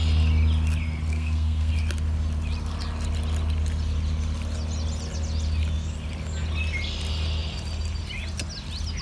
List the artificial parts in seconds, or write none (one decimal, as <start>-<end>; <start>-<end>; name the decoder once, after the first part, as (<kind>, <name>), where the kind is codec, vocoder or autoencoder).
1.1-1.7 (codec, SNAC)